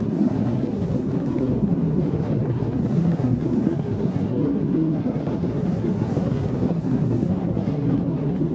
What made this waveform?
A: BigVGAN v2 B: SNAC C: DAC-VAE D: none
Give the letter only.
B